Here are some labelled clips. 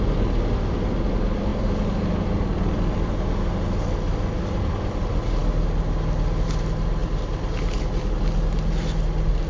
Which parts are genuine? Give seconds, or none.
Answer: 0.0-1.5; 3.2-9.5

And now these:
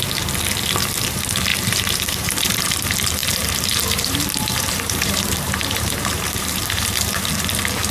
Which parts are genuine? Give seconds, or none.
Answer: 0.0-1.5; 2.7-3.2; 7.3-7.9

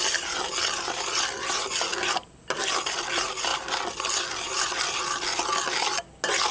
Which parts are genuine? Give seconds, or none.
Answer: 0.0-6.5